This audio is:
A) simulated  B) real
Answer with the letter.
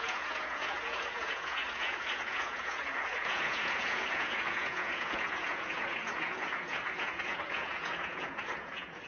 A